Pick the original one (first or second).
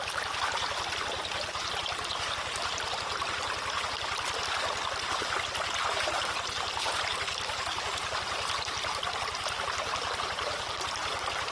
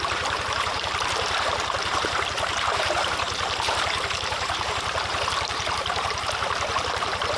first